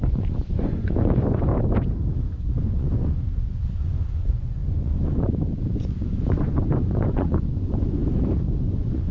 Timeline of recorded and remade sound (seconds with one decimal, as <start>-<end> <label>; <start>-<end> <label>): 0.0-1.5 remade; 1.5-2.4 recorded; 2.4-8.0 remade; 8.0-8.6 recorded; 8.6-9.1 remade